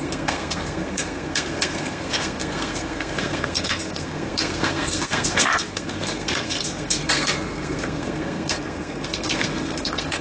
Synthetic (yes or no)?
yes